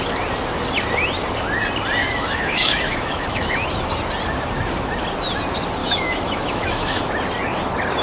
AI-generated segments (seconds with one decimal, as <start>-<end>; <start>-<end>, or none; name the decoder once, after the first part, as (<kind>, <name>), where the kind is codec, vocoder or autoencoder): 2.0-3.5 (autoencoder, DAC-VAE); 5.8-7.0